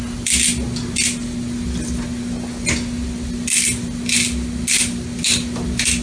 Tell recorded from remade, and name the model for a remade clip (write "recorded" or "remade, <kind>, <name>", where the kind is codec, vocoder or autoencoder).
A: recorded